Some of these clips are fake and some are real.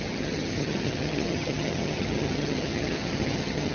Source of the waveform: fake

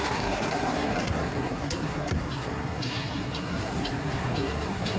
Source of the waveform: fake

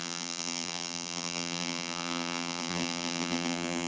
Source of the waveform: fake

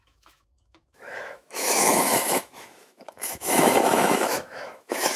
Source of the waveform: fake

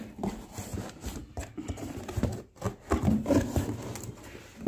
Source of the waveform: real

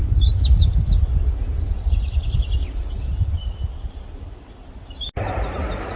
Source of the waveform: real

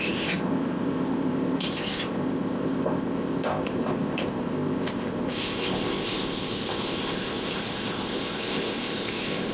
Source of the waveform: fake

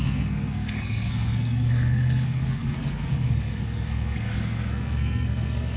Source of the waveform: fake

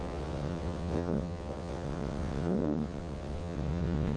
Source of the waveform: fake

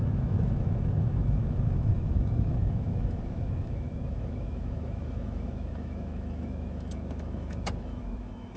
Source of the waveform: fake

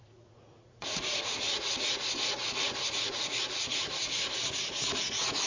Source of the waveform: fake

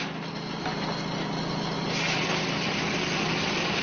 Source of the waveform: real